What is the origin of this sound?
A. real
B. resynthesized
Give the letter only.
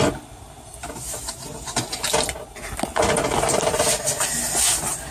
A